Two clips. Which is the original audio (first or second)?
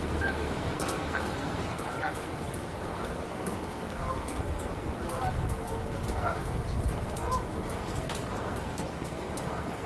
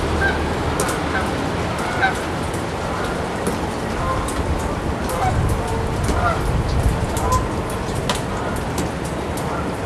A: second